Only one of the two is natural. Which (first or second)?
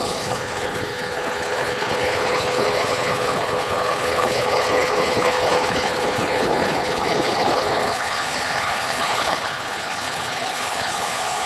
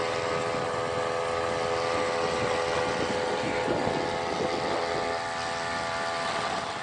second